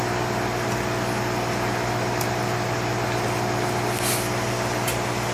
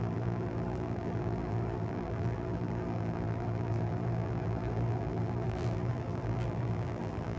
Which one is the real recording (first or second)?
first